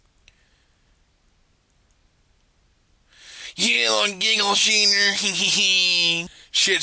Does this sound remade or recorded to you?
recorded